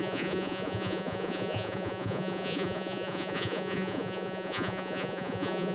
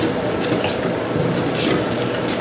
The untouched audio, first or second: second